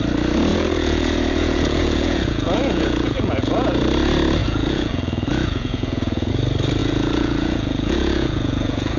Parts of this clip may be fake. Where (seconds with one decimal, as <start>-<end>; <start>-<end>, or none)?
0.5-3.8; 4.4-6.3; 6.8-9.0